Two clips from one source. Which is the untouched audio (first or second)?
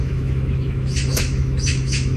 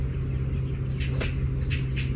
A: second